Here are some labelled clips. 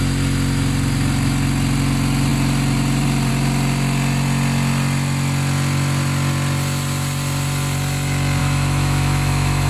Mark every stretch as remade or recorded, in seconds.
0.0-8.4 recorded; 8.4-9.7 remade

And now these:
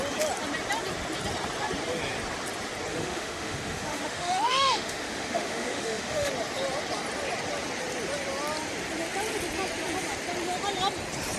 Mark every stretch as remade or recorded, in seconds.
0.0-2.9 recorded; 2.9-6.3 remade; 6.3-11.4 recorded

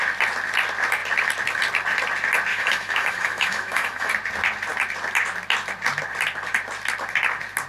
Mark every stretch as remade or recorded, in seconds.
0.0-2.5 recorded; 2.5-4.1 remade; 4.1-7.7 recorded

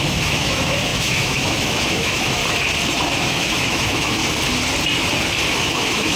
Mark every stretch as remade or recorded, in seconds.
0.0-2.4 remade; 2.4-3.2 recorded; 3.2-4.2 remade; 4.2-5.6 recorded; 5.6-6.2 remade

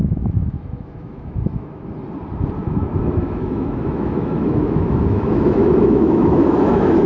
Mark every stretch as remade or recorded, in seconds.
0.0-1.9 remade; 1.9-2.6 recorded; 2.6-7.1 remade